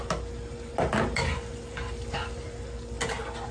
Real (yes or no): yes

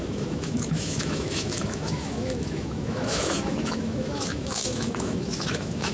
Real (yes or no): no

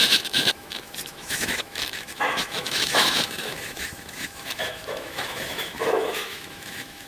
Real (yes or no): no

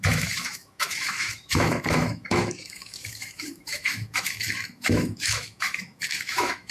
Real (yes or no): no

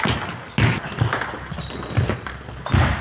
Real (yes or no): yes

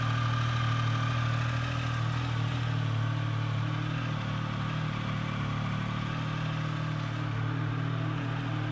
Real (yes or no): yes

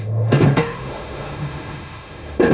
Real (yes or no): no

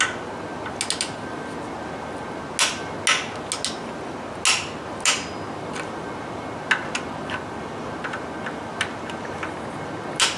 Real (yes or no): yes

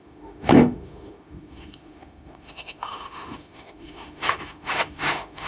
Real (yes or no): no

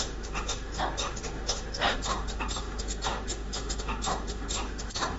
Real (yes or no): no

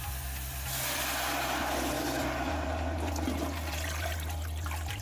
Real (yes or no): yes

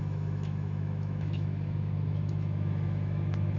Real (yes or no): no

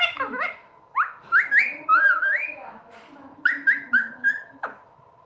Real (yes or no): no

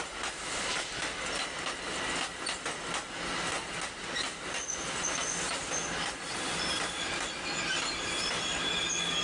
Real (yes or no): yes